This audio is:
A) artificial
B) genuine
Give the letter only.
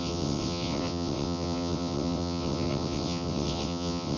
A